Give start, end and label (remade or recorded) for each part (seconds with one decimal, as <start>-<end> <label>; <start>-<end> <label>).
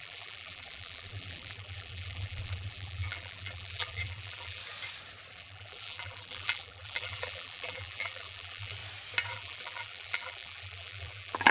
0.0-4.6 remade; 4.6-5.3 recorded; 5.3-8.8 remade; 8.8-9.3 recorded; 9.3-11.5 remade